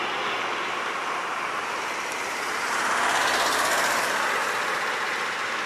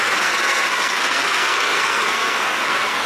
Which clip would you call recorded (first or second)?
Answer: first